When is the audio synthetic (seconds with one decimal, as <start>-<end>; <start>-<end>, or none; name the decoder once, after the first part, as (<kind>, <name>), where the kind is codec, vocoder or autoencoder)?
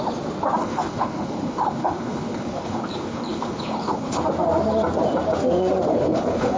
0.6-4.2 (codec, HILCodec); 5.9-6.6